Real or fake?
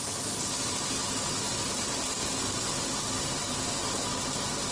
real